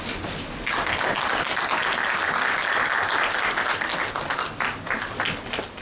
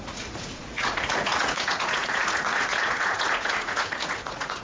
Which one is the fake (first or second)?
second